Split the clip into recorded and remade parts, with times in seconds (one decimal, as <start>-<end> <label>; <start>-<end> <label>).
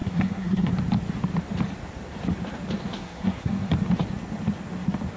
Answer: 0.0-0.7 remade; 0.7-2.9 recorded; 2.9-3.7 remade; 3.7-5.2 recorded